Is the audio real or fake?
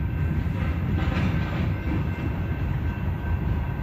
real